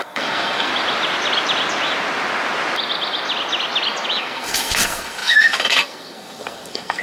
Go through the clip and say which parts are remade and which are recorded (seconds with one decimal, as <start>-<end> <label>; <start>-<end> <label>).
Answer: 0.0-0.7 remade; 0.7-4.2 recorded; 4.2-7.0 remade